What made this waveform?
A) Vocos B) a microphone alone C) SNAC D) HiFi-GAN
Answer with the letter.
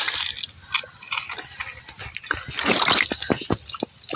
B